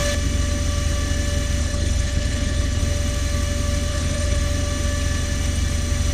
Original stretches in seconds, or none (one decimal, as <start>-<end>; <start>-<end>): 0.0-1.6; 2.8-3.9; 4.4-6.1